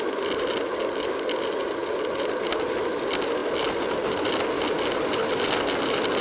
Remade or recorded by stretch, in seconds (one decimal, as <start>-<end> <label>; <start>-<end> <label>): 0.0-6.2 recorded